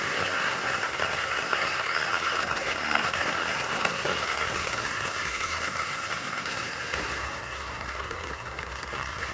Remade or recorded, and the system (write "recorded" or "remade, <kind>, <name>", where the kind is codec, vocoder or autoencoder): remade, codec, SNAC